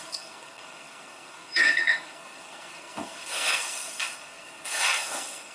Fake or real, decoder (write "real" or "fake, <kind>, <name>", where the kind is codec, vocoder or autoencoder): fake, codec, SNAC